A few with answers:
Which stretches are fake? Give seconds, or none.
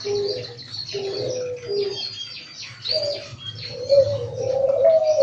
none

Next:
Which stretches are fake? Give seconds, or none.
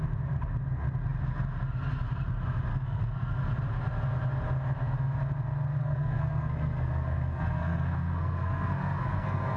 2.7-3.3 (codec, SNAC); 5.8-9.6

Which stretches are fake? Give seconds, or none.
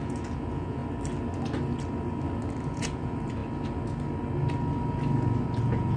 0.0-0.8 (vocoder, Vocos); 2.6-3.4; 5.6-6.0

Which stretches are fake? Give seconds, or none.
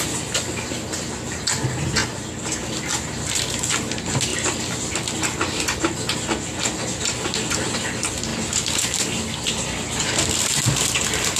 none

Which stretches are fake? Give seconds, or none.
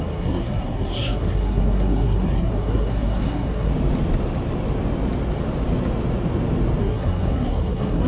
0.0-3.7 (codec, SNAC); 6.8-8.1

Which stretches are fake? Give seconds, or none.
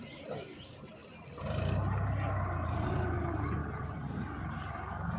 none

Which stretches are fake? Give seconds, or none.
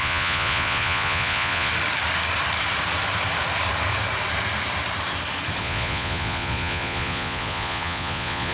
0.0-1.7 (vocoder, Vocos); 5.6-8.5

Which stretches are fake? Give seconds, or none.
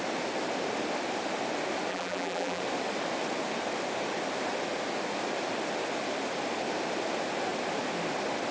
1.9-2.6 (vocoder, BigVGAN v2)